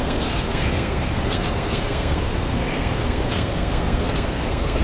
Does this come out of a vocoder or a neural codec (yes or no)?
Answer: yes